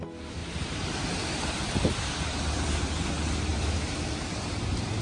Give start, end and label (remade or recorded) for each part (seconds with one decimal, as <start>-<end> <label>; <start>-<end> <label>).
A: 0.0-0.4 recorded; 0.4-3.1 remade; 3.1-3.5 recorded; 3.5-5.0 remade